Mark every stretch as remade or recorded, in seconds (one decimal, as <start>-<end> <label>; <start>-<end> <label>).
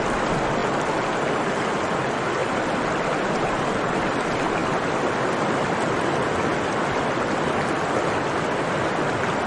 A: 0.0-2.4 recorded; 2.4-3.1 remade; 3.1-9.5 recorded